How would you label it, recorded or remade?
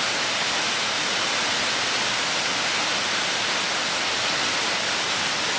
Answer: recorded